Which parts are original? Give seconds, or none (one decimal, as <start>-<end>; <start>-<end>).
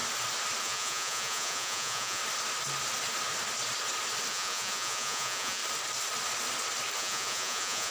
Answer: 0.0-0.6; 2.2-4.3; 5.6-7.0